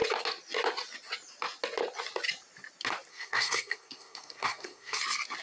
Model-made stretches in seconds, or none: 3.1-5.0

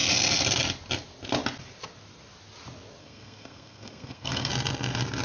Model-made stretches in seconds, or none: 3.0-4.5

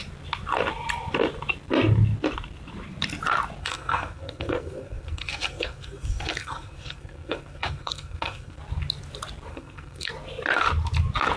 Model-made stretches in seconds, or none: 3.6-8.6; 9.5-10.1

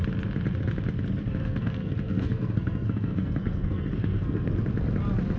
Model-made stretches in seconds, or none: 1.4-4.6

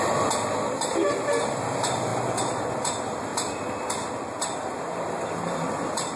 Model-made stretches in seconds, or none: none

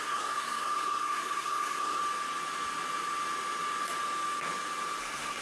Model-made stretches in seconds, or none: 0.0-2.0; 5.0-5.4

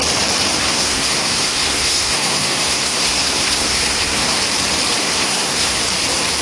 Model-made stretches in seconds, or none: 0.6-4.4; 5.0-5.8

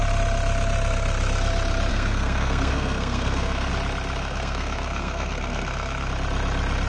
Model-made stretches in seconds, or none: 1.9-3.7; 4.2-6.1